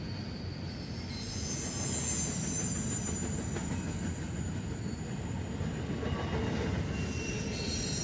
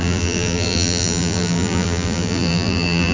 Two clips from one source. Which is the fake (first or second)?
second